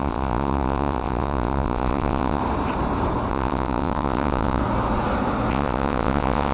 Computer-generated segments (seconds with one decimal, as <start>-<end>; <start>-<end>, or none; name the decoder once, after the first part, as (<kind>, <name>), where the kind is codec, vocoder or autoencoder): 0.0-2.4 (vocoder, WaveNeXt); 3.3-4.6; 5.5-6.5